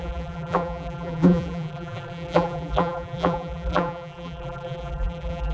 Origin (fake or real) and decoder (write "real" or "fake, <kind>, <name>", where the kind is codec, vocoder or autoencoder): fake, vocoder, BigVGAN v2